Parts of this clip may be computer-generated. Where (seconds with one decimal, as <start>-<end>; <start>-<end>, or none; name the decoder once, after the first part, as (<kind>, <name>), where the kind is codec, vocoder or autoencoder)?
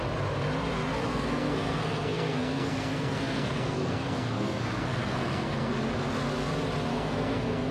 1.1-5.7 (codec, SNAC); 6.9-7.7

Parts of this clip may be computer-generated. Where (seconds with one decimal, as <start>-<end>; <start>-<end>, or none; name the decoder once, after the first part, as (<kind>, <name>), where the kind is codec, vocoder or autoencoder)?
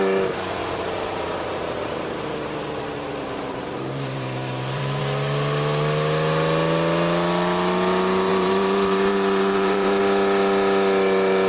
0.6-5.0 (vocoder, BigVGAN v2); 8.3-10.0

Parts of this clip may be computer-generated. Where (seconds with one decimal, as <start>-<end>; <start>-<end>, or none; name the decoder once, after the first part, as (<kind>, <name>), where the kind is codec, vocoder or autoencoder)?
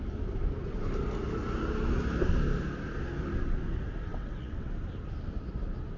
4.1-4.7 (vocoder, WaveNeXt)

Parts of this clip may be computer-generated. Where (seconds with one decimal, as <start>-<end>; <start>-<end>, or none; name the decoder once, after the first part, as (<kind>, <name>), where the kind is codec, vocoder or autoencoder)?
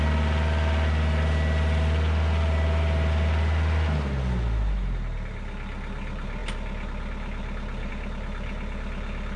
none